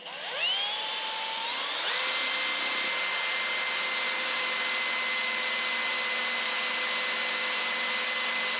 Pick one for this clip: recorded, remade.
recorded